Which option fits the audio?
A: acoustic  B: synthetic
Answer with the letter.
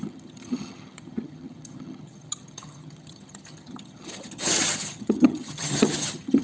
B